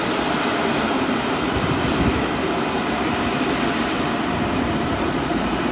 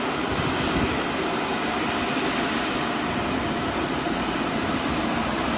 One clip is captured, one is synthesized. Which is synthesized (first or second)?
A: first